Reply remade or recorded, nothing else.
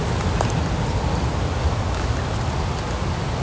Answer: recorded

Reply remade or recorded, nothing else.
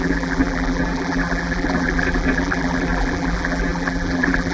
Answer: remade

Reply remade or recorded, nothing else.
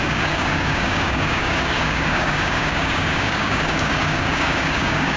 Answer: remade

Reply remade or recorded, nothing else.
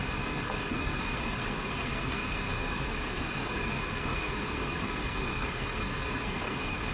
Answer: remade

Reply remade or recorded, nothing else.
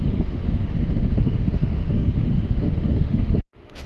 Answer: remade